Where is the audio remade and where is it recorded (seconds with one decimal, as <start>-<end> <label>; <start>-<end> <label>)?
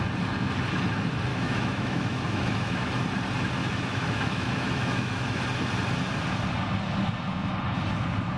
0.0-1.3 recorded; 1.3-2.9 remade; 2.9-3.6 recorded; 3.6-5.4 remade; 5.4-8.4 recorded